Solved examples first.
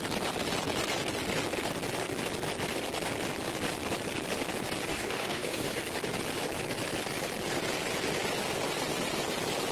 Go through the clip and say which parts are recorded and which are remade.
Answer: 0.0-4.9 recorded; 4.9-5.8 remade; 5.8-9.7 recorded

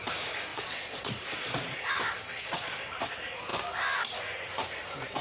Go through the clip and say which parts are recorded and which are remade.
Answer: 0.0-0.5 recorded; 0.5-1.9 remade; 1.9-2.3 recorded; 2.3-2.9 remade; 2.9-5.2 recorded

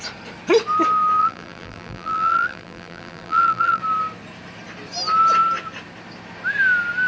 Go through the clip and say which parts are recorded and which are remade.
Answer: 0.0-1.2 recorded; 1.2-3.8 remade; 3.8-7.1 recorded